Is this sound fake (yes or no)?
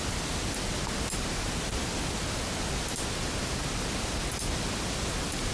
no